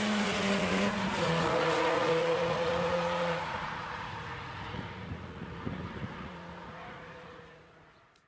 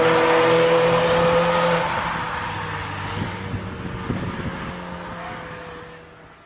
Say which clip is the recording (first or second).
second